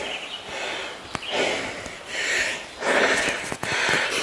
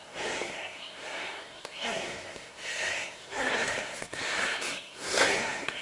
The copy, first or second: second